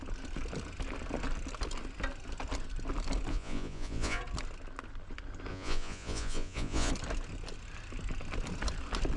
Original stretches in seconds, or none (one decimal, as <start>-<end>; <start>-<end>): 0.0-3.3; 4.2-5.5; 6.9-9.2